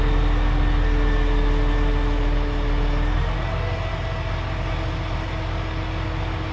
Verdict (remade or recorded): recorded